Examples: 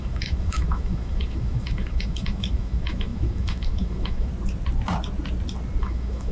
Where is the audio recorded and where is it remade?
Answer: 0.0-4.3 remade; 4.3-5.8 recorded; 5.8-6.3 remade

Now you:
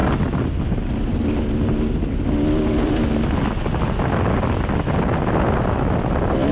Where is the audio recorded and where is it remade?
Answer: 0.0-6.5 recorded

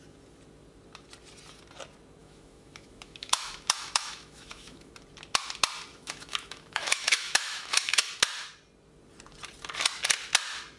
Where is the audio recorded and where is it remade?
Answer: 0.0-2.2 recorded; 2.2-4.9 remade; 4.9-5.9 recorded; 5.9-8.1 remade; 8.1-10.8 recorded